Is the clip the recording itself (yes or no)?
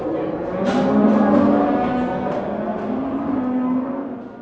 yes